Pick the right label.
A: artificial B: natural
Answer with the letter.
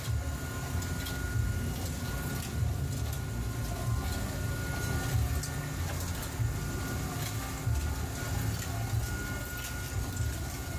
B